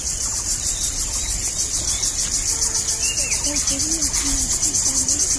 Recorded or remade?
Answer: recorded